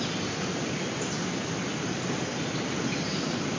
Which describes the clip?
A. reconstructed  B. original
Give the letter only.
B